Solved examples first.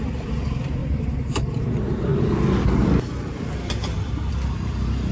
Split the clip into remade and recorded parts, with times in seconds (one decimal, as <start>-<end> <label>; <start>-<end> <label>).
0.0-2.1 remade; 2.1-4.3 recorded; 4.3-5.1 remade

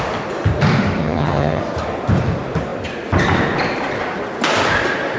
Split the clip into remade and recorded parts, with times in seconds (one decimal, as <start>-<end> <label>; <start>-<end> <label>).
0.0-1.0 recorded; 1.0-1.6 remade; 1.6-5.2 recorded

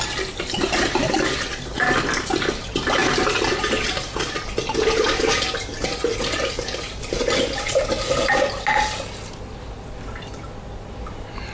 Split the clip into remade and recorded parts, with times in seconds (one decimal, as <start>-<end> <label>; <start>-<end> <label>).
0.0-11.5 recorded

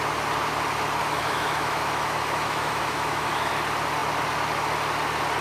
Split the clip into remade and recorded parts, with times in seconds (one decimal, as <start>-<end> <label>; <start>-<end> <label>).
0.0-1.0 recorded; 1.0-3.5 remade; 3.5-5.4 recorded

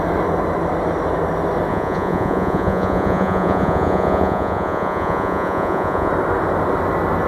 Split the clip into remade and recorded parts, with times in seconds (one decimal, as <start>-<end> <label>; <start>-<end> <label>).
0.0-1.7 recorded; 1.7-6.1 remade; 6.1-7.3 recorded

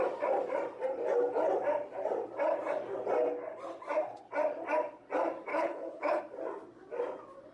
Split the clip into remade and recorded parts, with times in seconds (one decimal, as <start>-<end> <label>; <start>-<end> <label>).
0.0-5.5 recorded; 5.5-6.2 remade; 6.2-7.5 recorded

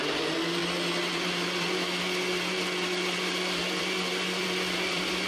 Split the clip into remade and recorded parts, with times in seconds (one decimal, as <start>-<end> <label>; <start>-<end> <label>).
0.0-0.6 remade; 0.6-3.8 recorded; 3.8-5.3 remade

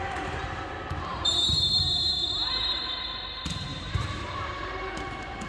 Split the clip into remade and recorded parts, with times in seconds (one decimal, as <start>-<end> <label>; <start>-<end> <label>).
0.0-1.1 recorded; 1.1-2.8 remade; 2.8-3.7 recorded; 3.7-4.7 remade; 4.7-5.5 recorded